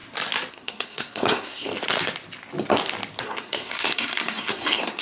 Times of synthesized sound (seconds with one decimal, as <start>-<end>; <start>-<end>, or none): 0.5-1.7; 3.2-5.0